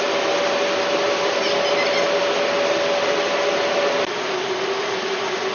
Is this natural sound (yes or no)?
yes